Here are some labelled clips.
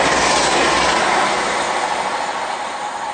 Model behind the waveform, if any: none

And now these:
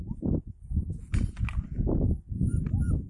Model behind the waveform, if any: none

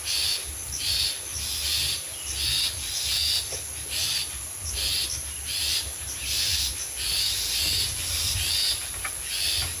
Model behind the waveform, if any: none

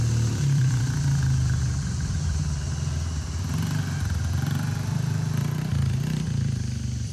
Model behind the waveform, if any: vocoder, BigVGAN v2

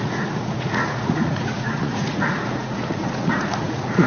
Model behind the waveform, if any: vocoder, Vocos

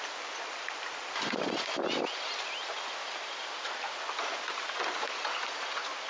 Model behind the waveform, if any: none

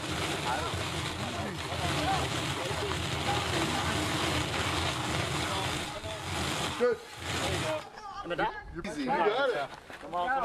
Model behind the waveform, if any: none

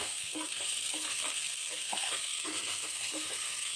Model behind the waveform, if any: codec, SNAC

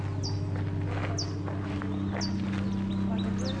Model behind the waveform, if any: none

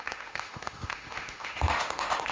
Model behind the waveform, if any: autoencoder, DAC-VAE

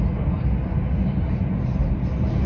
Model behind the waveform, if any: none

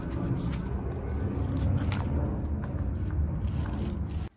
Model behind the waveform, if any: none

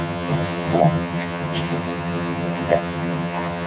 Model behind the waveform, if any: vocoder, HiFi-GAN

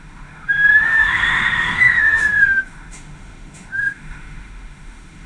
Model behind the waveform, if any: autoencoder, DAC-VAE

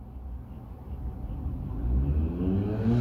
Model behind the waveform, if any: none